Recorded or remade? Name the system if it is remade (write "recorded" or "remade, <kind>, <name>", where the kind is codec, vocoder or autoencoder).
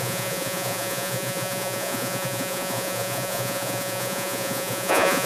remade, vocoder, Vocos